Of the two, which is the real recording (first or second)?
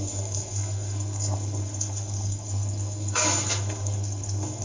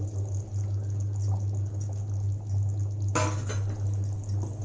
second